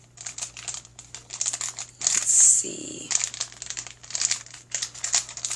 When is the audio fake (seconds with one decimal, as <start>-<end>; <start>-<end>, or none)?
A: none